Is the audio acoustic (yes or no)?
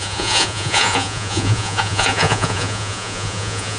no